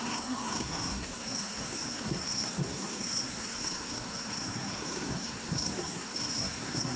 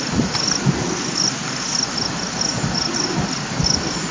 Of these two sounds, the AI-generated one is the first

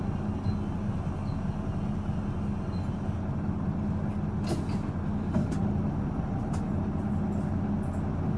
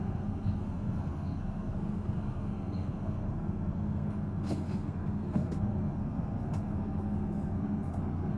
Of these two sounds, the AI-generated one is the second